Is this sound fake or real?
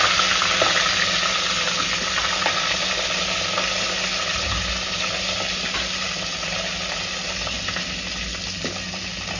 real